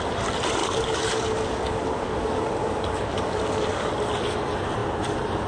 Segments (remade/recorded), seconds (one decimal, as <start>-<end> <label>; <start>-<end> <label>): 0.0-0.6 recorded; 0.6-3.9 remade; 3.9-5.5 recorded